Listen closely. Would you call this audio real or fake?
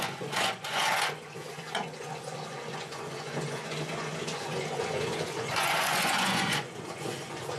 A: fake